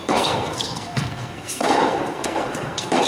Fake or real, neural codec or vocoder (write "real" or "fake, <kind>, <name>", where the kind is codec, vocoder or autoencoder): fake, codec, SNAC